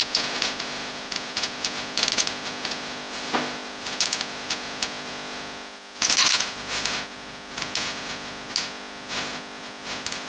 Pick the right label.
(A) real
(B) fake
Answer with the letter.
A